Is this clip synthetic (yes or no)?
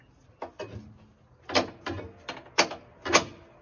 no